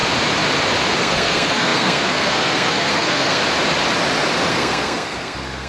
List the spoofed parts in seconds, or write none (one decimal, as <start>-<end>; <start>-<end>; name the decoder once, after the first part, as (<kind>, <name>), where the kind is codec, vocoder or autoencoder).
1.0-3.4 (codec, SNAC); 4.5-5.7